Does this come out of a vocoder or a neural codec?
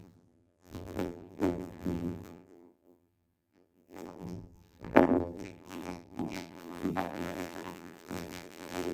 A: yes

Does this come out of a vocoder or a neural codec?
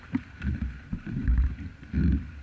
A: no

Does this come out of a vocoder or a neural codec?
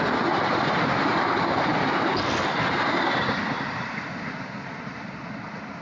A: no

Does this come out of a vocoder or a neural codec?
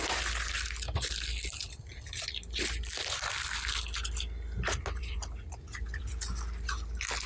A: no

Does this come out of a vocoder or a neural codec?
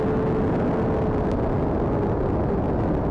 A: no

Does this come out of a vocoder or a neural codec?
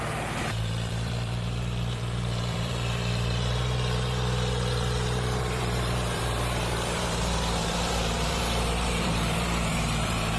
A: yes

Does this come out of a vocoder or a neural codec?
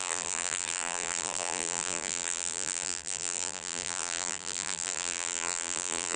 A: yes